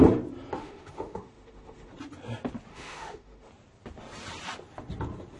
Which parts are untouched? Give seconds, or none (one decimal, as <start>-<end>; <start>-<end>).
0.0-0.6; 1.9-2.7; 3.5-5.4